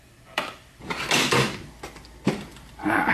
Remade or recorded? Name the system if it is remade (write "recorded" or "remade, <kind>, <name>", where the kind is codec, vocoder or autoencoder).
remade, vocoder, BigVGAN v2